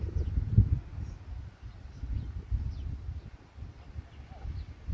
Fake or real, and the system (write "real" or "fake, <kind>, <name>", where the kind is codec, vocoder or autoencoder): real